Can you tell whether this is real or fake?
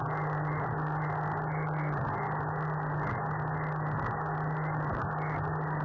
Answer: real